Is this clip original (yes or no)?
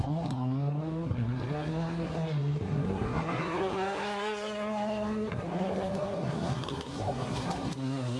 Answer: no